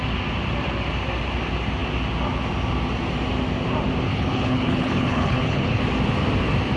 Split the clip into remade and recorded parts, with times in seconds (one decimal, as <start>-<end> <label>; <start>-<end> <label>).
0.0-4.1 recorded; 4.1-5.8 remade; 5.8-6.8 recorded